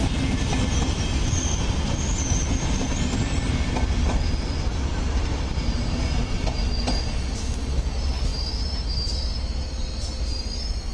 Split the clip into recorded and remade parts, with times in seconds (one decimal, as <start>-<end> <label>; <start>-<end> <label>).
0.0-10.9 recorded